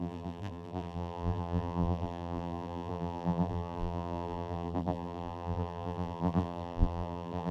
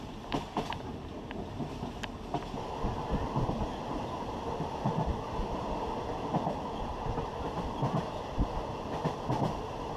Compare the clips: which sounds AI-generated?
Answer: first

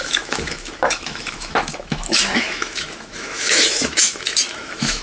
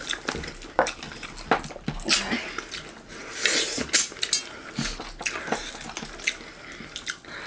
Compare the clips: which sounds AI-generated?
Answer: first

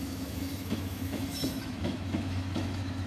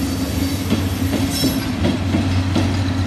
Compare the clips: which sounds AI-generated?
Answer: first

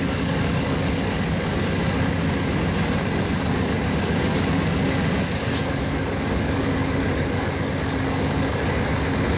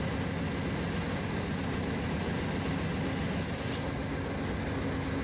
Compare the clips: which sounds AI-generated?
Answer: first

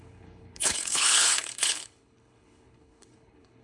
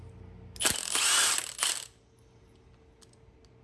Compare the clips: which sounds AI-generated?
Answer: first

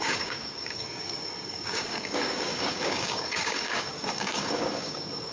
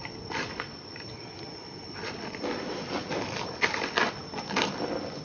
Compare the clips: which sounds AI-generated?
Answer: first